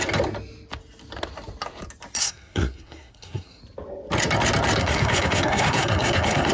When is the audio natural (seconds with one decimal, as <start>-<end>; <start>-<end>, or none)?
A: 0.0-2.2; 3.6-4.8